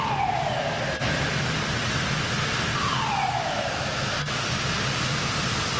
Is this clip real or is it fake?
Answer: real